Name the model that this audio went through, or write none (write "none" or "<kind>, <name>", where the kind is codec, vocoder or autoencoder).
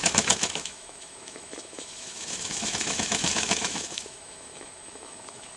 autoencoder, DAC-VAE